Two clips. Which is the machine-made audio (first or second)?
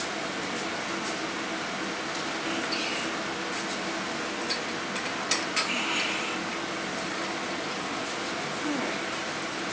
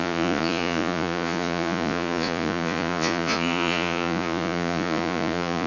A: second